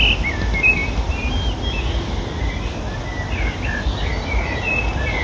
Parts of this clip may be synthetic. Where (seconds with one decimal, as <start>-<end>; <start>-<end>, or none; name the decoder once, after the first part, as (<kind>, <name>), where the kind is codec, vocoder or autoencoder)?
none